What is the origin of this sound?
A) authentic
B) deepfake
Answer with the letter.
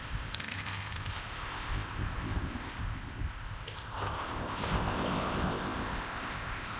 B